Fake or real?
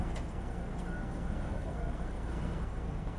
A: fake